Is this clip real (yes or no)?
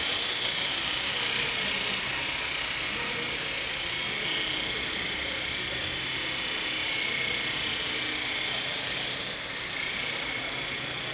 yes